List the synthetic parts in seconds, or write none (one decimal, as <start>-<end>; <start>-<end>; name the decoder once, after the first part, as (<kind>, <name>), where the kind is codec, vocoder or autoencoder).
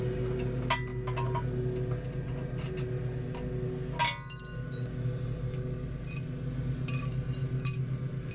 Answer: none